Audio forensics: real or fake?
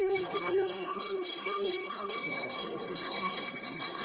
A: fake